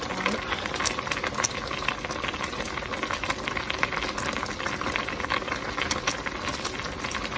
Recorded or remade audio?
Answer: recorded